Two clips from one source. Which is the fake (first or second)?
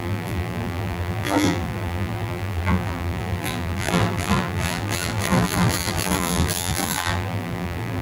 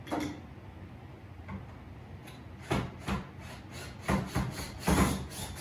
first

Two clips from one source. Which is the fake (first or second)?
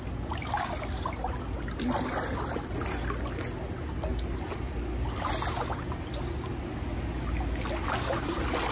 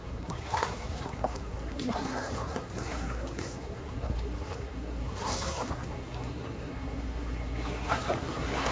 second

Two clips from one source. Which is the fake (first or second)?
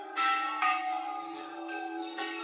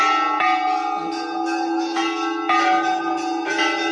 first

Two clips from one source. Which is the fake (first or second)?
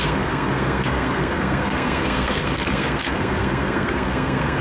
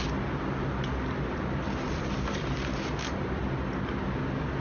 first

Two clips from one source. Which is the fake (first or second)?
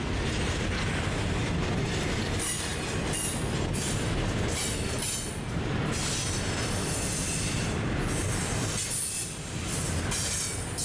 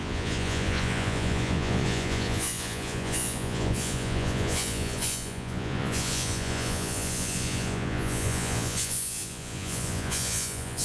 second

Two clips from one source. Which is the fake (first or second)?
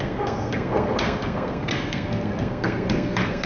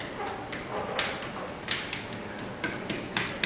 first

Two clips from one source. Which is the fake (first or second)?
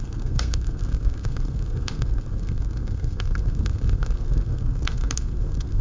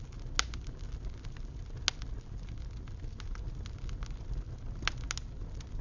first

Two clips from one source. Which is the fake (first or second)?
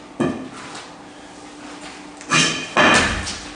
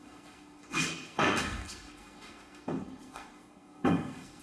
second